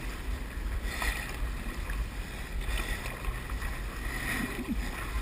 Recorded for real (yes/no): yes